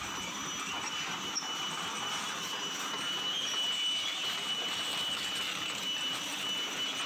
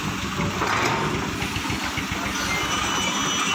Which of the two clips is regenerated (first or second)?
first